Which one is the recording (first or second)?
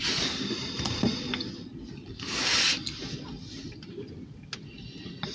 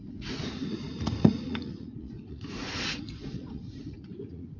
first